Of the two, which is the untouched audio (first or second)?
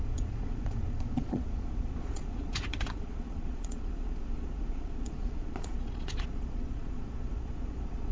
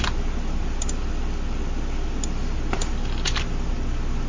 second